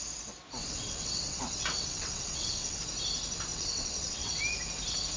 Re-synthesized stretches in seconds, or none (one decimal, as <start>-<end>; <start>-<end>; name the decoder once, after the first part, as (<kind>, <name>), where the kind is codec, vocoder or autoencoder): 0.6-2.8 (vocoder, WaveNeXt); 3.5-4.4